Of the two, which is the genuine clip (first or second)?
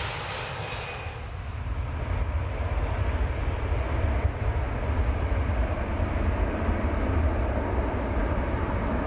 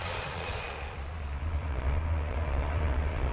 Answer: first